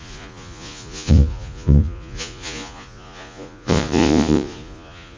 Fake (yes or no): yes